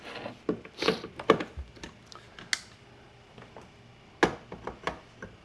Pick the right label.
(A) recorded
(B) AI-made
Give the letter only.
A